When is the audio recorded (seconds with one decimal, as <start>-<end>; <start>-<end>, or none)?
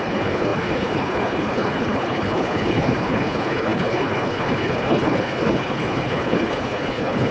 none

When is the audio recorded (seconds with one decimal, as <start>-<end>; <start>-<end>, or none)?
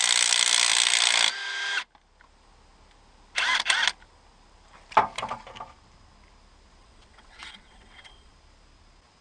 0.0-6.8; 8.3-9.2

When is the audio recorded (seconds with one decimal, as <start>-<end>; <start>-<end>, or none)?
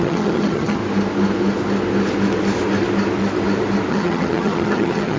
0.8-3.9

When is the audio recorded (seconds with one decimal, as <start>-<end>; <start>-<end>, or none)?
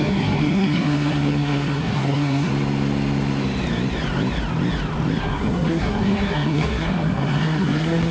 2.5-5.2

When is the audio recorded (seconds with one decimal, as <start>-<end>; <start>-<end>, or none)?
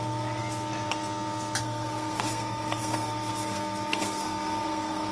0.4-1.6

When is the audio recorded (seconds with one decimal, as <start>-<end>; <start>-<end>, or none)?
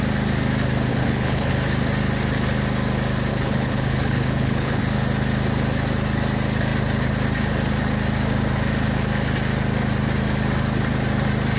0.0-0.9; 1.5-3.3; 4.8-11.6